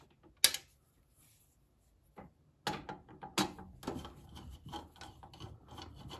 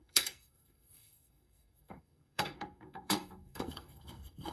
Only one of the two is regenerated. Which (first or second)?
second